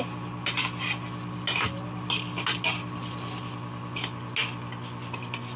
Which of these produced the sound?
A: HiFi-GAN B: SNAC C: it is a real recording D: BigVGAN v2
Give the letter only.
C